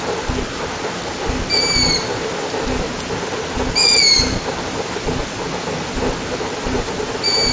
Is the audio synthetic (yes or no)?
no